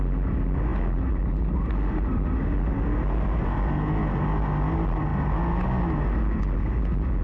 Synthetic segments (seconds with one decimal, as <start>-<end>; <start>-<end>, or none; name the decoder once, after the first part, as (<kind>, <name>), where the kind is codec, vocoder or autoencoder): none